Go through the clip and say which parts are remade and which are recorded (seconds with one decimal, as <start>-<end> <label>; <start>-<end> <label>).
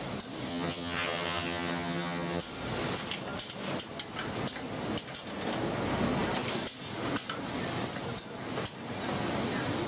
0.0-0.5 recorded; 0.5-2.4 remade; 2.4-9.9 recorded